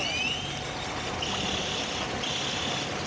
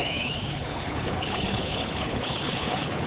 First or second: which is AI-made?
second